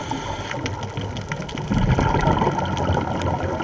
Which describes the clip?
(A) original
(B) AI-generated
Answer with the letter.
A